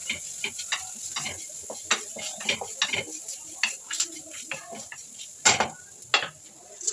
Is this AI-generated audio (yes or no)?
no